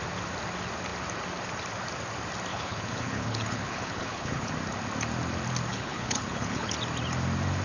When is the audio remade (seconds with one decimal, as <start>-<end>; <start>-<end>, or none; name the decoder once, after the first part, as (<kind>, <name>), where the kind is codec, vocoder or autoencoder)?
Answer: 2.5-4.5 (codec, HILCodec); 5.7-6.7